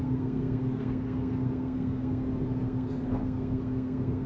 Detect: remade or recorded remade